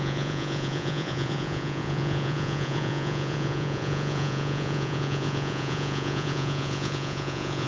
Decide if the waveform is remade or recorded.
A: remade